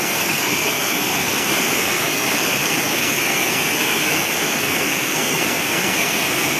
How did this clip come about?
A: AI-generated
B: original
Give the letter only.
A